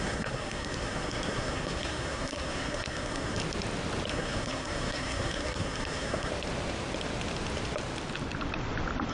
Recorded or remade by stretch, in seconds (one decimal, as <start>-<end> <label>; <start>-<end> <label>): 0.0-3.4 remade; 3.4-4.1 recorded; 4.1-6.3 remade; 6.3-9.1 recorded